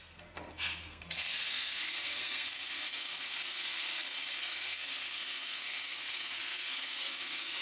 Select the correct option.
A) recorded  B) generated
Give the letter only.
B